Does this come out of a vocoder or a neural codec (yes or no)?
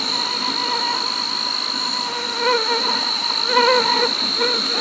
no